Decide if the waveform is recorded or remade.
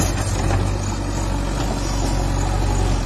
recorded